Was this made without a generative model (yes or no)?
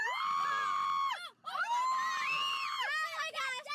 yes